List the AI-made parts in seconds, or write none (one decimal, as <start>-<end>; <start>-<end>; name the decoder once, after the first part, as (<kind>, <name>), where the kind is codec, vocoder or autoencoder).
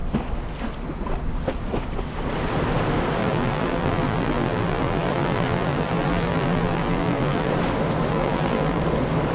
3.2-7.5 (vocoder, BigVGAN v2); 8.1-8.8